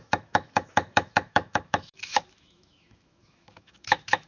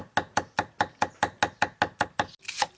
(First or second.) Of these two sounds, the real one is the second